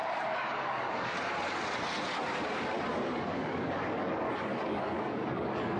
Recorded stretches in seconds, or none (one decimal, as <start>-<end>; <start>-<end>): 1.3-2.9